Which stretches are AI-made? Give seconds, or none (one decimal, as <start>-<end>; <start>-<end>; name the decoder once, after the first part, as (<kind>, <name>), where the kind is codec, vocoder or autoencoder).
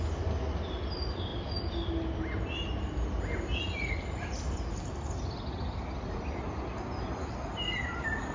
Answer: none